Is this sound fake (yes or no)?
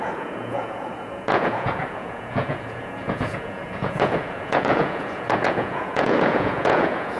yes